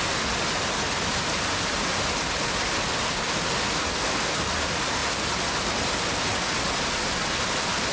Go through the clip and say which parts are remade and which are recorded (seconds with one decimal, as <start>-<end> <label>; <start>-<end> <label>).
0.0-7.9 recorded